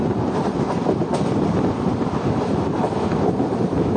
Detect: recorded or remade recorded